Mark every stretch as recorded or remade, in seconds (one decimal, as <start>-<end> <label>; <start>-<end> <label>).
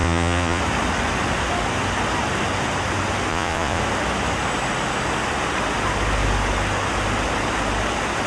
0.0-0.6 remade; 0.6-3.3 recorded; 3.3-3.8 remade; 3.8-8.3 recorded